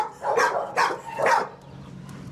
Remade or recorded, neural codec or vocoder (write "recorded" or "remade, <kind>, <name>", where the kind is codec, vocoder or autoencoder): recorded